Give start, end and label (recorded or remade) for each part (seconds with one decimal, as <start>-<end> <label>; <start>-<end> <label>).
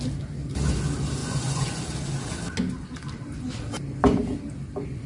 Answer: 0.0-1.2 recorded; 1.2-1.8 remade; 1.8-5.1 recorded